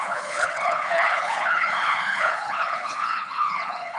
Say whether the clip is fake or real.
fake